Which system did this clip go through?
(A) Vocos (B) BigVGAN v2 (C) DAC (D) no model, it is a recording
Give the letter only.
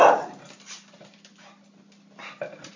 D